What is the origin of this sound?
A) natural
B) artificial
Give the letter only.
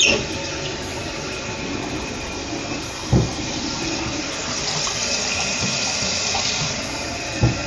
B